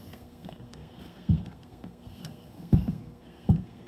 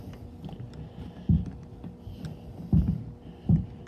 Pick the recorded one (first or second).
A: second